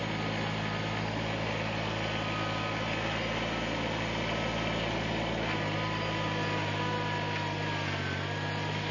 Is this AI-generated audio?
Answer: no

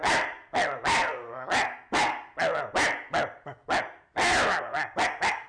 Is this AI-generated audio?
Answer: no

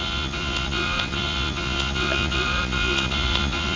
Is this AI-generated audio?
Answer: yes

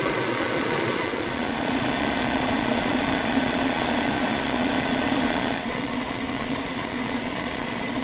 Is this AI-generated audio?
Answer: yes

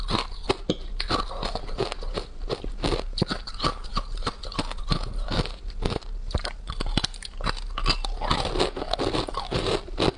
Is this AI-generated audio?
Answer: no